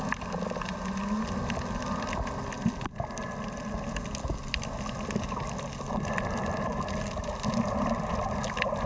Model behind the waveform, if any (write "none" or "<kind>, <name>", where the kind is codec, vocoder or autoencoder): none